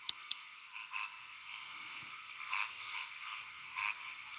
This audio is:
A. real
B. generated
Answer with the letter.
B